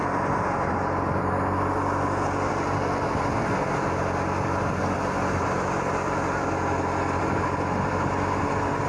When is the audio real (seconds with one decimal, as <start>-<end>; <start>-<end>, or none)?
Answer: 0.0-8.9